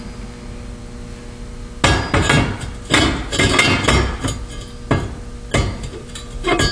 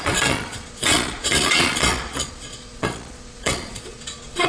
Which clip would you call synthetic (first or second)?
second